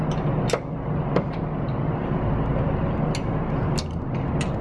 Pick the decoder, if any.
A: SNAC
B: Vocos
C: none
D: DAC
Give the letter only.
C